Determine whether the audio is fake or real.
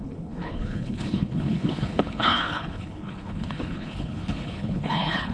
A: fake